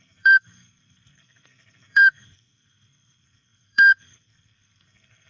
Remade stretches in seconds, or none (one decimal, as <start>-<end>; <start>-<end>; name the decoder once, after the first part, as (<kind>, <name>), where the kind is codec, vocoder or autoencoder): 0.0-5.3 (codec, SNAC)